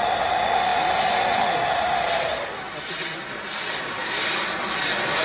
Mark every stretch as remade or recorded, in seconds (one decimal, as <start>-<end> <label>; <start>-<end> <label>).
0.0-5.2 recorded